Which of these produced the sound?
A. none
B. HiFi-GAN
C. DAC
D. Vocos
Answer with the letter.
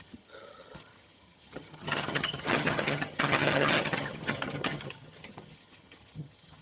B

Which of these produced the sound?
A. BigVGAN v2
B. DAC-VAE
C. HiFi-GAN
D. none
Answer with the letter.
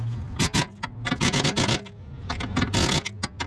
D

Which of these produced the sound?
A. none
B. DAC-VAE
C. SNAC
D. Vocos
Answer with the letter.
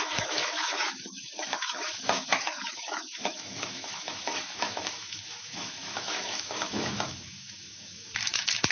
B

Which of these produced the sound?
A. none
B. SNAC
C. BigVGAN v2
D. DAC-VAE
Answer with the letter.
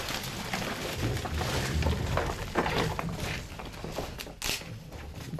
A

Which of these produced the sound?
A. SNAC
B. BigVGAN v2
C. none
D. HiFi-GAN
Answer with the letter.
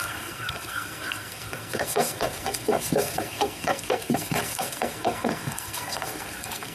A